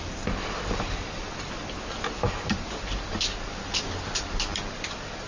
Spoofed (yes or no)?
no